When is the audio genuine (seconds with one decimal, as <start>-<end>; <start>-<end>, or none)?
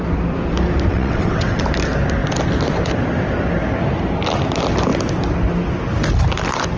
0.0-0.9; 1.6-6.8